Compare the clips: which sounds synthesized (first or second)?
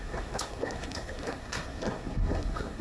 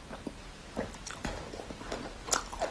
first